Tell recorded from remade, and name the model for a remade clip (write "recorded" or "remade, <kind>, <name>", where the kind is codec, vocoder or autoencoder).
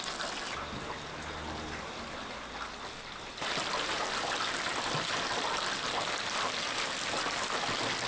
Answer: recorded